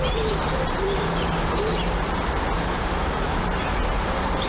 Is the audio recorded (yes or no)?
no